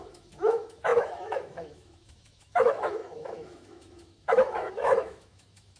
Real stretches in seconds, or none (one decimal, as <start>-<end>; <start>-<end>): none